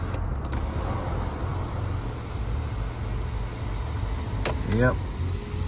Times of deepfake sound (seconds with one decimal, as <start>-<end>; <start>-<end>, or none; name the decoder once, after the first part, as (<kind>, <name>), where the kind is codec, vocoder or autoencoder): none